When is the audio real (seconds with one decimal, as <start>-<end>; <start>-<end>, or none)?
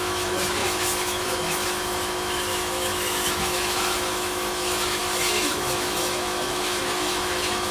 none